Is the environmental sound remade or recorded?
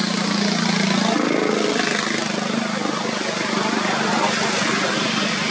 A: recorded